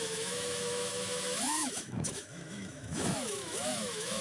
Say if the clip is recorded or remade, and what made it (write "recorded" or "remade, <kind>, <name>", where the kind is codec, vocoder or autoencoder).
remade, autoencoder, DAC-VAE